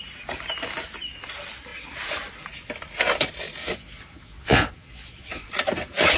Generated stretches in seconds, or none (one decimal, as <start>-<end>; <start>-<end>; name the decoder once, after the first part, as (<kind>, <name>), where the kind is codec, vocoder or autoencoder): 3.6-5.5 (vocoder, Vocos)